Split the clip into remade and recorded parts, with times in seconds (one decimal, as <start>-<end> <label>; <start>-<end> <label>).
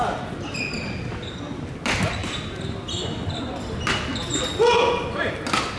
0.0-5.8 recorded